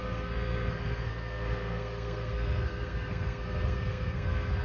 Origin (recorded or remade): remade